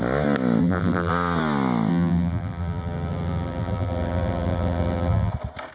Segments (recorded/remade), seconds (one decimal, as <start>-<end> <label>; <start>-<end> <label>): 0.0-0.6 recorded; 0.6-1.1 remade; 1.1-1.9 recorded; 1.9-5.3 remade; 5.3-5.7 recorded